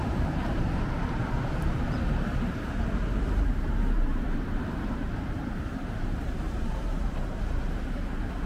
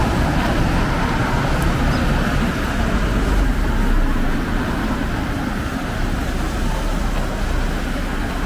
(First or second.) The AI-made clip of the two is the first